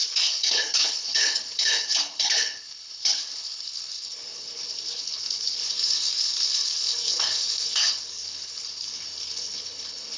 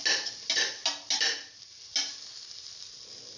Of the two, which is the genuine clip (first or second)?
second